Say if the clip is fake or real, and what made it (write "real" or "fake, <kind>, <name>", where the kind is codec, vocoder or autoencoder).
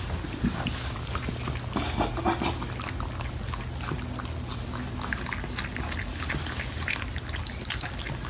real